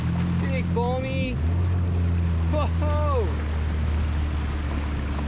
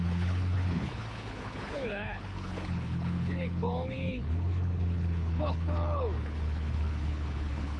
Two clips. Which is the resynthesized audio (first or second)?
second